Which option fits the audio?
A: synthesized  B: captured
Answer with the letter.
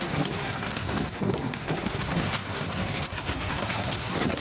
A